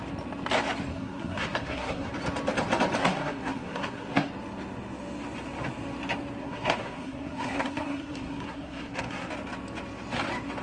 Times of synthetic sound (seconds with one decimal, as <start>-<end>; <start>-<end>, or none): 0.9-2.1; 3.0-4.3; 6.4-9.3